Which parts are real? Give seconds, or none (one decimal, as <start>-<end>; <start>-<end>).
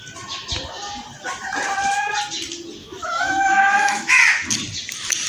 0.0-2.8; 4.1-5.3